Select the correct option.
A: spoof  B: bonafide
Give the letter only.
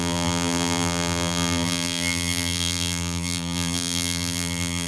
A